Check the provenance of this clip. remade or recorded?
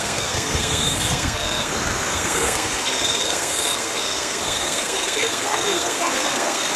remade